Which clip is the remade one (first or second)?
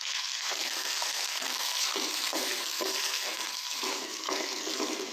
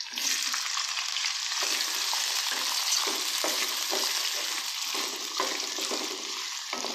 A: first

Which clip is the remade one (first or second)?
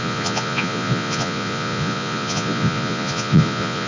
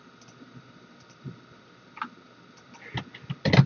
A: first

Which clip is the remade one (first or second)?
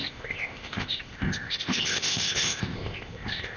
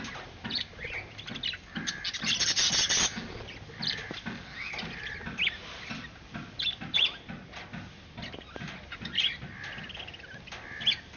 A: first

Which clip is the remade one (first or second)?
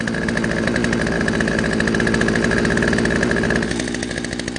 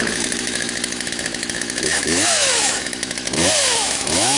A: second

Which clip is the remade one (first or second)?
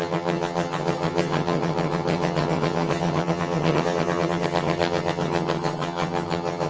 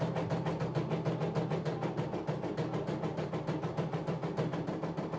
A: first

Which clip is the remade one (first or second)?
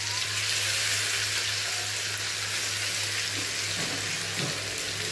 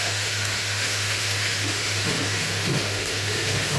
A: second